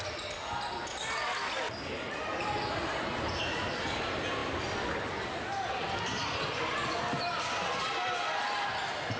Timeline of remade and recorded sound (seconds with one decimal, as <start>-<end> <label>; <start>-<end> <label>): 0.0-6.7 recorded; 6.7-8.4 remade; 8.4-9.2 recorded

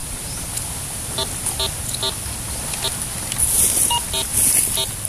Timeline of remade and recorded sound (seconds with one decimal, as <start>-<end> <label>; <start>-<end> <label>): 0.0-5.1 recorded